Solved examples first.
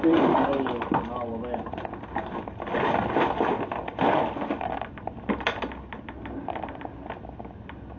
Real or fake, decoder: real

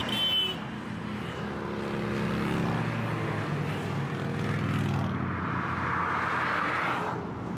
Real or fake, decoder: real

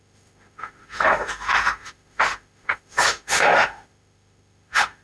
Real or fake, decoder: fake, autoencoder, DAC-VAE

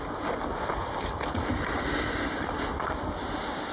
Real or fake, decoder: real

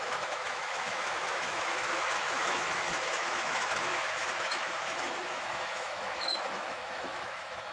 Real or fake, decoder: fake, autoencoder, DAC-VAE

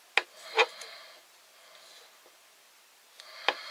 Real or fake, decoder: real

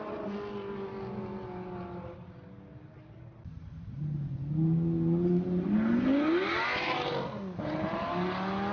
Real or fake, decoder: real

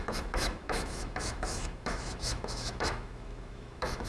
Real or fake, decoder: fake, autoencoder, DAC-VAE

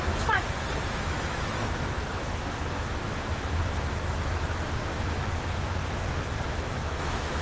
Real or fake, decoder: fake, autoencoder, DAC-VAE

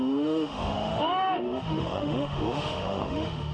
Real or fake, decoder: fake, autoencoder, DAC-VAE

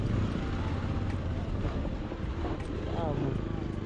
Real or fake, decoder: real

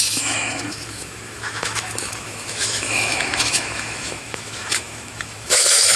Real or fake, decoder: fake, autoencoder, DAC-VAE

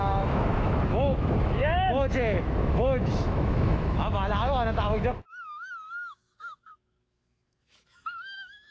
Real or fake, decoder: fake, autoencoder, DAC-VAE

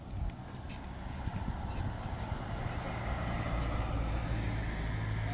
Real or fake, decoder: real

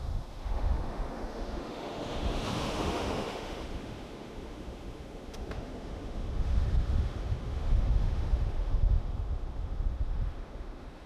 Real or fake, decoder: fake, autoencoder, DAC-VAE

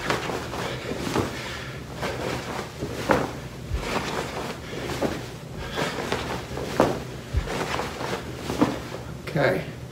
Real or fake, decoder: real